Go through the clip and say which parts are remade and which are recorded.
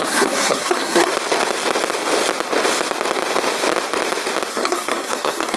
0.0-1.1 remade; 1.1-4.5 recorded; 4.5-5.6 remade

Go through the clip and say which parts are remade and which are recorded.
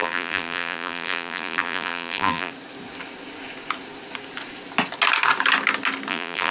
0.0-2.5 remade; 2.5-6.1 recorded; 6.1-6.5 remade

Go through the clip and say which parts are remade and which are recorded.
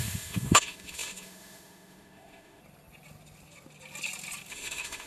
0.0-2.6 remade; 2.6-4.5 recorded; 4.5-5.1 remade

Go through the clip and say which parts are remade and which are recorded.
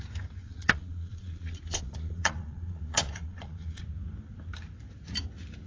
0.0-0.4 recorded; 0.4-3.8 remade; 3.8-5.7 recorded